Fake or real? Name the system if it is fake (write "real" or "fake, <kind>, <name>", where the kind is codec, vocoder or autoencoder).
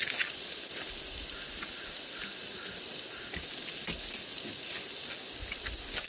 real